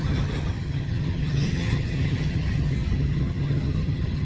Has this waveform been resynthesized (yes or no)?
yes